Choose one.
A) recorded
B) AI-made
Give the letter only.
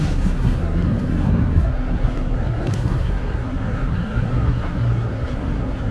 B